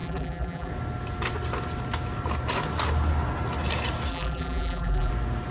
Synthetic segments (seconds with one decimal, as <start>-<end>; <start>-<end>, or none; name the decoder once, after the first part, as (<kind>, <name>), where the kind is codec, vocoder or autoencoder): 0.0-0.7 (vocoder, BigVGAN v2); 4.1-5.1